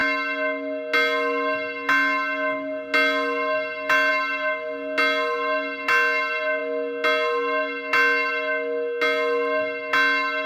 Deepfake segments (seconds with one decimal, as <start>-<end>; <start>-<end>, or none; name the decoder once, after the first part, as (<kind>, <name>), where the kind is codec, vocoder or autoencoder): none